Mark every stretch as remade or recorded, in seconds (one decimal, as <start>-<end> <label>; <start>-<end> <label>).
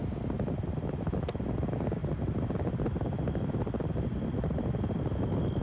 0.0-5.6 recorded